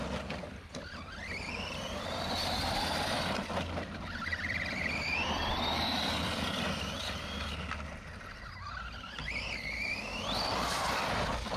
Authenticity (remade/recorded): recorded